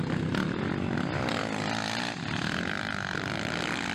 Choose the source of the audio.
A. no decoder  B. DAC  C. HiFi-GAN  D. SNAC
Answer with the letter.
A